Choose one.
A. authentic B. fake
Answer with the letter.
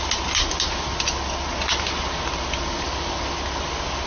A